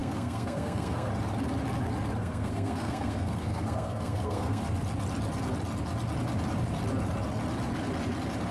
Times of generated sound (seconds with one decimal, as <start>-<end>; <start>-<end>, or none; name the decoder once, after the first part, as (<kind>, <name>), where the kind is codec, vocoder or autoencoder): 0.0-1.1 (codec, SNAC); 2.2-4.6